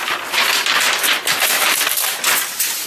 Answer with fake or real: real